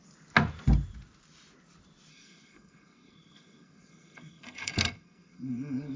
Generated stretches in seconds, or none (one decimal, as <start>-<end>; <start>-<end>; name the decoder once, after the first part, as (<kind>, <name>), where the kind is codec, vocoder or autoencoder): 2.1-6.0 (codec, SNAC)